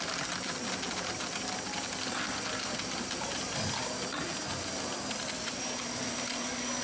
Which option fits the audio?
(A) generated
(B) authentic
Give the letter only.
B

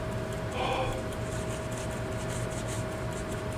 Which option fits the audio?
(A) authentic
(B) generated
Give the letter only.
A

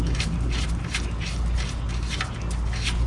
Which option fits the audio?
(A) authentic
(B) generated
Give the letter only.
A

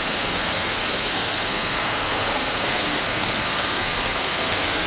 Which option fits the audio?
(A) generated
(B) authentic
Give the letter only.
A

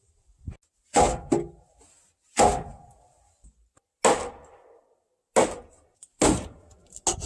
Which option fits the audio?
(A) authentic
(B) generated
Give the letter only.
A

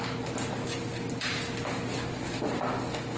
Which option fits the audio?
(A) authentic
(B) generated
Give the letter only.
A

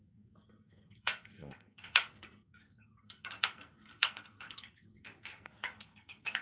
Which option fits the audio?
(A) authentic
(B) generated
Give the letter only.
B